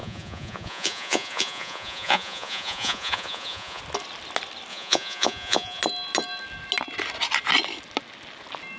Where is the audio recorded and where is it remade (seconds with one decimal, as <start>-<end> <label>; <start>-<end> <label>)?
0.0-3.8 remade; 3.8-4.7 recorded; 4.7-5.8 remade; 5.8-8.8 recorded